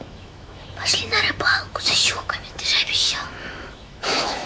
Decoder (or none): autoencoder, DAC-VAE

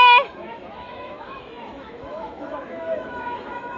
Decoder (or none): autoencoder, DAC-VAE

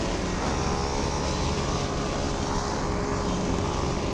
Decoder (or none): none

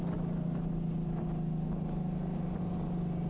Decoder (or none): none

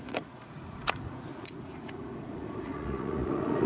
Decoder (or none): vocoder, Vocos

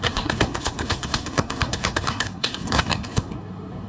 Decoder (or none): codec, SNAC